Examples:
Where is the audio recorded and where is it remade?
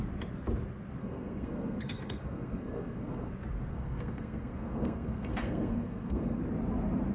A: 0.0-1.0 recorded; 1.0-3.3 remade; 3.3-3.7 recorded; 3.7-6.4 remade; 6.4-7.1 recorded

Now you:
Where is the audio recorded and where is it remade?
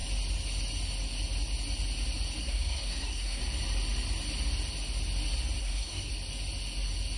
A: 0.0-2.4 recorded; 2.4-3.4 remade; 3.4-5.6 recorded; 5.6-6.1 remade; 6.1-7.2 recorded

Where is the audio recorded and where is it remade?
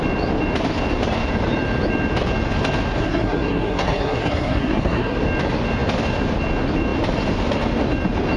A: 0.0-3.0 recorded; 3.0-5.2 remade; 5.2-8.4 recorded